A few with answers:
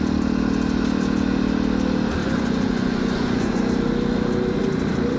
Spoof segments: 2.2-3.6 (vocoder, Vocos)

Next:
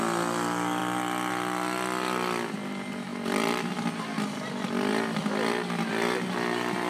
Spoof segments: 3.1-3.9 (vocoder, BigVGAN v2)